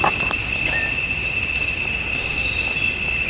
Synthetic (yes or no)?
no